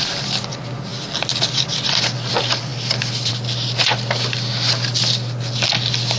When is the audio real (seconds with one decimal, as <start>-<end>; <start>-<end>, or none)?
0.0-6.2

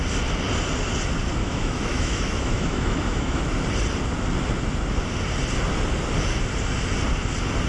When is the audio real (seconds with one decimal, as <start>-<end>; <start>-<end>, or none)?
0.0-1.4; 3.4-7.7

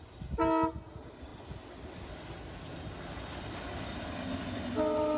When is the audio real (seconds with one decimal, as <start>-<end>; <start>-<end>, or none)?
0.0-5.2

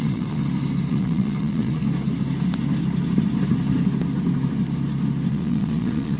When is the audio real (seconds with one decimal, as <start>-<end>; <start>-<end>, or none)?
0.4-0.9; 1.8-5.3